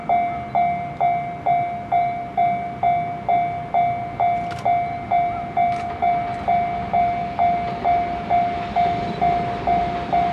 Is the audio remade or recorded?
recorded